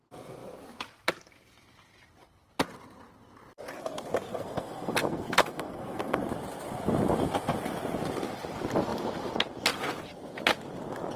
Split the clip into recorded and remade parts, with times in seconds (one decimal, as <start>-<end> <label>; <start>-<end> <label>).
0.0-4.3 recorded; 4.3-6.2 remade; 6.2-11.2 recorded